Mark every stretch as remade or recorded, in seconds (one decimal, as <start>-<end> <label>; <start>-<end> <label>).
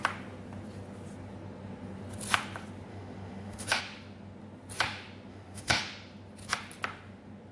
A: 0.0-2.9 recorded; 2.9-3.8 remade; 3.8-5.3 recorded; 5.3-5.8 remade; 5.8-7.5 recorded